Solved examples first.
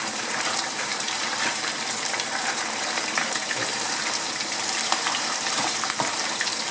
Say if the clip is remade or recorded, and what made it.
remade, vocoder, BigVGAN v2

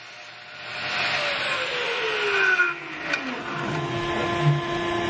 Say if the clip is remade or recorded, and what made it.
recorded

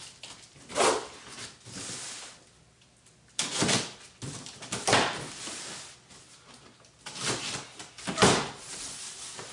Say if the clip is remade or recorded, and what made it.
recorded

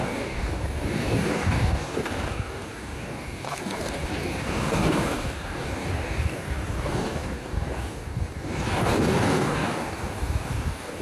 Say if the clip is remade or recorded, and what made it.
remade, codec, DAC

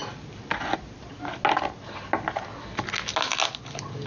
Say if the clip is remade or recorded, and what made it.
recorded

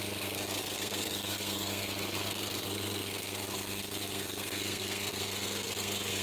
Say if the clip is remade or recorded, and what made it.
remade, codec, SNAC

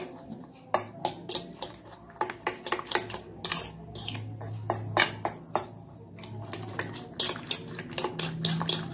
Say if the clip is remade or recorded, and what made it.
recorded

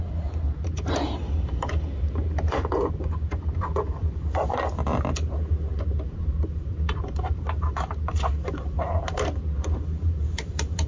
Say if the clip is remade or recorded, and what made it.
remade, vocoder, BigVGAN v2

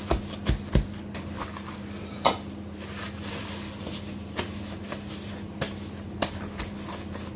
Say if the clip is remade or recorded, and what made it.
recorded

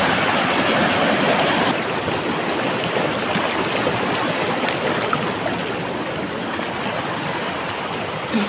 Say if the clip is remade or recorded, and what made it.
recorded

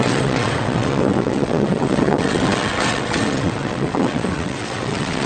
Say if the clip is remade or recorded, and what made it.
remade, vocoder, WaveNeXt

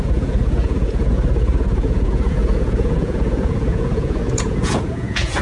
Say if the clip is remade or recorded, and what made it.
remade, vocoder, Vocos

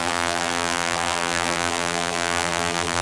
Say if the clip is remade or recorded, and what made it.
remade, vocoder, BigVGAN v2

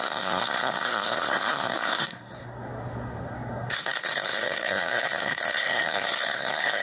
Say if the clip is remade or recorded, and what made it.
remade, codec, SNAC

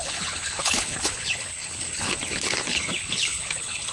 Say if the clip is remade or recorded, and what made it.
remade, codec, HILCodec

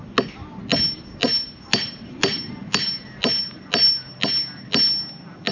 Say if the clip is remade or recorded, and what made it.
recorded